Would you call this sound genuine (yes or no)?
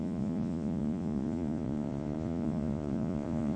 no